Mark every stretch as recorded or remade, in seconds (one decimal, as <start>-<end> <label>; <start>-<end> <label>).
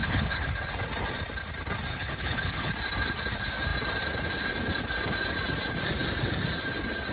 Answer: 0.0-0.5 remade; 0.5-1.9 recorded; 1.9-2.7 remade; 2.7-7.1 recorded